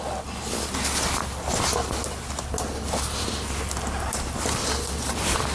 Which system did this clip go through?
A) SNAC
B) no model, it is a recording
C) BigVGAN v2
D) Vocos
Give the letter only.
B